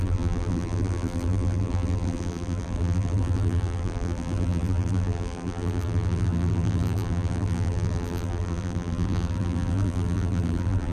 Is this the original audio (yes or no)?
no